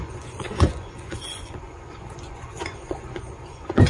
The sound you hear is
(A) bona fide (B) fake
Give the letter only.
B